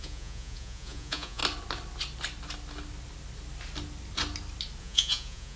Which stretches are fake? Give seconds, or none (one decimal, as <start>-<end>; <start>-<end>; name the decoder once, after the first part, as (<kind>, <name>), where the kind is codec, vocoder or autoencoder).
0.0-1.4 (vocoder, Vocos); 4.8-5.6